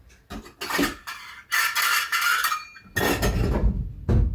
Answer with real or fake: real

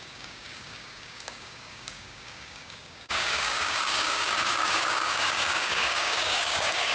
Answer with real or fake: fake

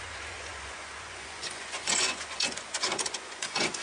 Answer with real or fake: fake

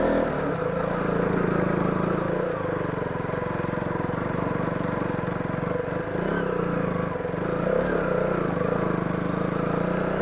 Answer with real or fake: real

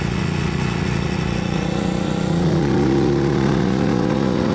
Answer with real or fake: fake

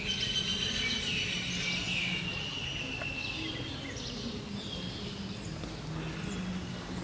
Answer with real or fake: real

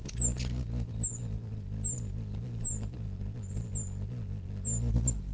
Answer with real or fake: real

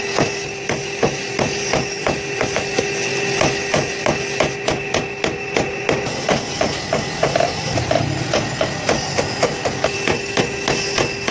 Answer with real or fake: real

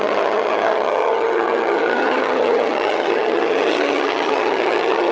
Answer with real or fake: fake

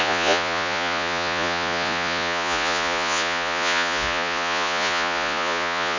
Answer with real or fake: fake